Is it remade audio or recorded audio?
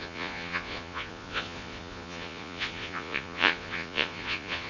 remade